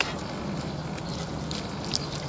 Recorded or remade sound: recorded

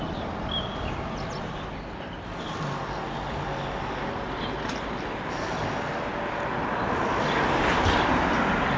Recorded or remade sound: recorded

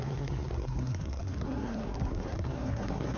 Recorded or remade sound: remade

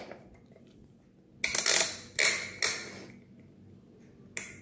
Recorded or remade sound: recorded